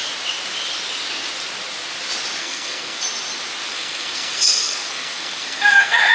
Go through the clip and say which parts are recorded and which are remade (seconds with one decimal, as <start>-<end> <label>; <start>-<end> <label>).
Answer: 0.0-2.4 recorded; 2.4-3.0 remade; 3.0-3.7 recorded; 3.7-6.1 remade